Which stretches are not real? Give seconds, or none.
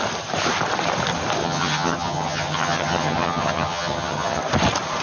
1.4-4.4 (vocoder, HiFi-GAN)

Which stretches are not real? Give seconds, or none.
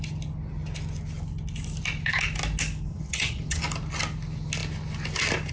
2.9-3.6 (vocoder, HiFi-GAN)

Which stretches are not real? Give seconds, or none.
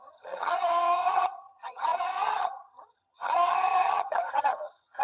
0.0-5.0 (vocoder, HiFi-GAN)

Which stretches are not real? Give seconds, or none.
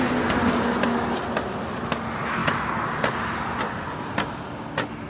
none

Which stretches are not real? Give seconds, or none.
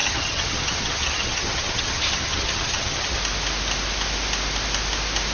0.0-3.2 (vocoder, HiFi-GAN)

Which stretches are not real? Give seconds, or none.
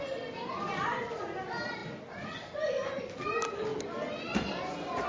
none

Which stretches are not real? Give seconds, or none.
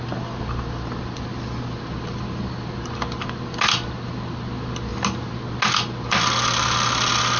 none